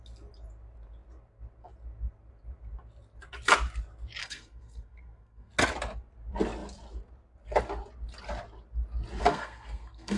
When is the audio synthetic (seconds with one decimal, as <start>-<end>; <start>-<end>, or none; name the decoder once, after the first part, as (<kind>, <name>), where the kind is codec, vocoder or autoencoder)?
4.2-5.5 (codec, SNAC); 9.2-10.2